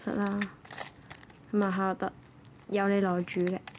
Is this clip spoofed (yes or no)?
no